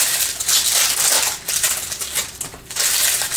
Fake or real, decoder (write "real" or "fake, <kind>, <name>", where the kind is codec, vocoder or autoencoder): fake, vocoder, BigVGAN v2